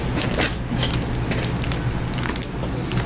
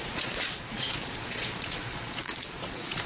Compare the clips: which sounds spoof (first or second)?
second